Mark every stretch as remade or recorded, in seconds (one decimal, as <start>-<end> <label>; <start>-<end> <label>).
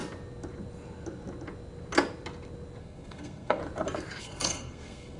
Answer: 0.0-2.8 recorded; 2.8-3.6 remade; 3.6-4.2 recorded; 4.2-5.2 remade